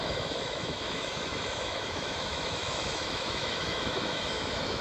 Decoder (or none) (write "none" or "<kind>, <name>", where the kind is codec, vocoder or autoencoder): autoencoder, DAC-VAE